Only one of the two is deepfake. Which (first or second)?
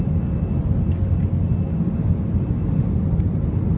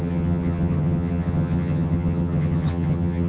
second